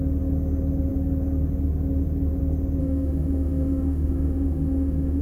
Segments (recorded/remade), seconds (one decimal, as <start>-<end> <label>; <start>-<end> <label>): 0.0-2.8 recorded; 2.8-5.2 remade